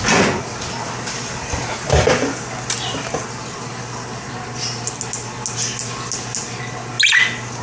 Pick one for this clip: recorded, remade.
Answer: recorded